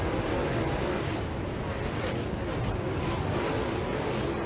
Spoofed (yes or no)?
no